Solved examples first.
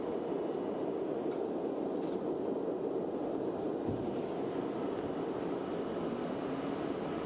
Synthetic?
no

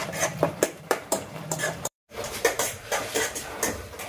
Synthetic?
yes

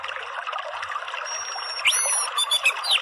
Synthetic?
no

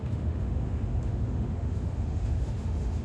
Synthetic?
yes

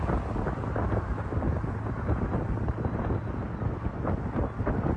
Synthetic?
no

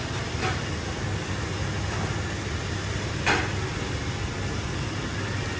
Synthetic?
no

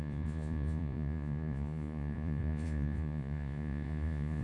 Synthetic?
yes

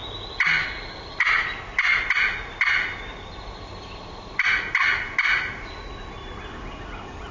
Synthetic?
no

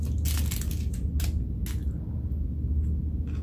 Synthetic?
no